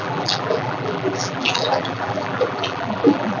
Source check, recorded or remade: remade